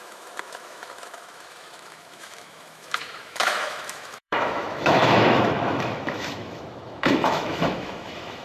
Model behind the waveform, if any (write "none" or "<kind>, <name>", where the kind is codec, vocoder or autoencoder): autoencoder, DAC-VAE